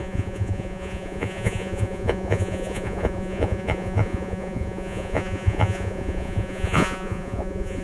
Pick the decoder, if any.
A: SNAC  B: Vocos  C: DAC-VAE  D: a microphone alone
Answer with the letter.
B